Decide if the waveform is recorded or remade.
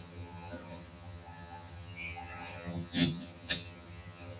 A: remade